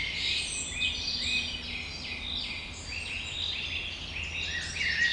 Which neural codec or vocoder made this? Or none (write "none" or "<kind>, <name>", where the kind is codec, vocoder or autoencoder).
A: none